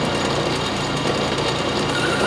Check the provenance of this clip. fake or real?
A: fake